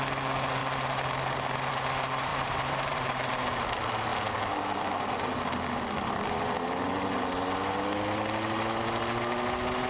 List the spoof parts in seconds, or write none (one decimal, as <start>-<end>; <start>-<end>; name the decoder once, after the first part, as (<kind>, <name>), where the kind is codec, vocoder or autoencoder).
2.3-3.3 (vocoder, BigVGAN v2)